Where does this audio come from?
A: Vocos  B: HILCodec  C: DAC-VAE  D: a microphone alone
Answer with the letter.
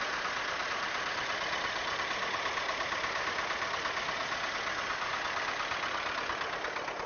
D